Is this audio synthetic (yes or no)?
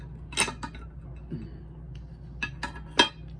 no